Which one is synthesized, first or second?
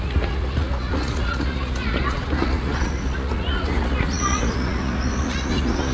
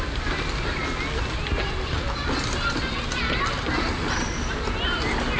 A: first